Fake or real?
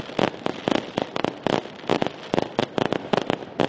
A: real